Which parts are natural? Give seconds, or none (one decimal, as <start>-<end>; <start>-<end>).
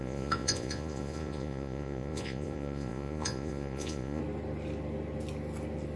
4.2-6.0